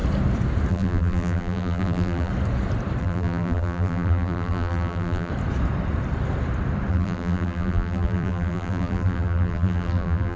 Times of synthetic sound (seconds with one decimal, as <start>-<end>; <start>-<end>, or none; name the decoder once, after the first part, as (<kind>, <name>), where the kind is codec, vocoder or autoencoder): 0.7-2.3 (vocoder, BigVGAN v2); 3.0-5.3; 6.9-10.4